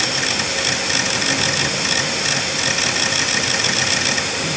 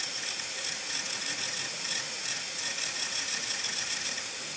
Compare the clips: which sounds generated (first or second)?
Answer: second